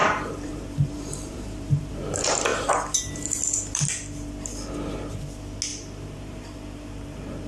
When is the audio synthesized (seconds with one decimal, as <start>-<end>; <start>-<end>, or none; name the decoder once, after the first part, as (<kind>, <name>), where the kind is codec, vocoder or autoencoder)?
0.0-1.9 (vocoder, BigVGAN v2); 2.5-3.1; 5.7-7.5